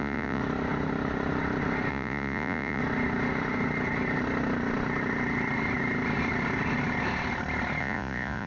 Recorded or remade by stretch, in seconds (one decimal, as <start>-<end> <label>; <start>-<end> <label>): 0.0-0.4 remade; 0.4-1.9 recorded; 1.9-2.8 remade; 2.8-7.8 recorded; 7.8-8.5 remade